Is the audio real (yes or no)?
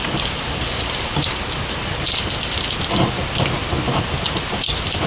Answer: yes